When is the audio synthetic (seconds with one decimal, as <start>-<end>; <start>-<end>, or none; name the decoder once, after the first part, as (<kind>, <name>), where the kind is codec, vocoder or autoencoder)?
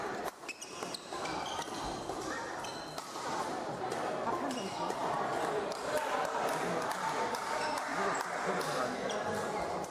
7.9-8.7 (vocoder, BigVGAN v2)